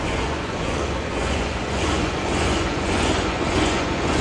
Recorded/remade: remade